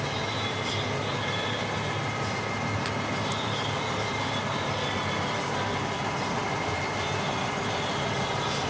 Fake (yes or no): no